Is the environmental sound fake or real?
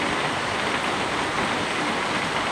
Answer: real